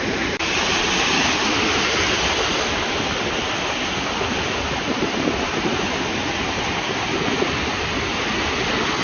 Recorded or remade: recorded